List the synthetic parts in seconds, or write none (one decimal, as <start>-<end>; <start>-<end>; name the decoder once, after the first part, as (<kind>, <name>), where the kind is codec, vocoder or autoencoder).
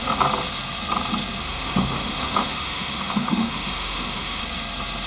1.4-4.4 (autoencoder, DAC-VAE)